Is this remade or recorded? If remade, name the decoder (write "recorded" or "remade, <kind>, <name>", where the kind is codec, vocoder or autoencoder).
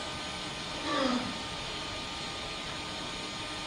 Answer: recorded